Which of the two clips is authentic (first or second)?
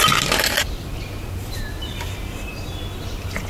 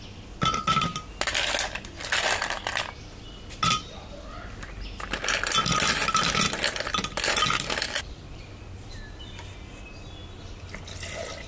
second